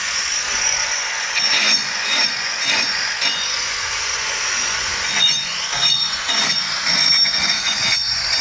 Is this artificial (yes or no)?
yes